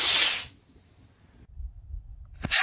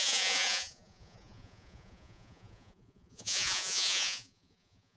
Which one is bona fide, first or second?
first